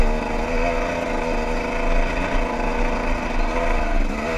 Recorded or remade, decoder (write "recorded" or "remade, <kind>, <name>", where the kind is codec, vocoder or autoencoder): recorded